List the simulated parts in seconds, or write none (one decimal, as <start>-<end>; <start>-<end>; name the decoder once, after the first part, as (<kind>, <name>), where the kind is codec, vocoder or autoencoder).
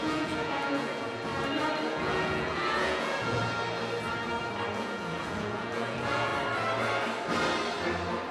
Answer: 0.0-1.3 (vocoder, Vocos); 1.9-3.4; 4.7-6.3